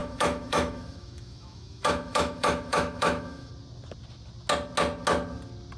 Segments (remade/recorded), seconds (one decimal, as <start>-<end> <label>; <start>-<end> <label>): 0.0-3.5 remade; 3.5-5.8 recorded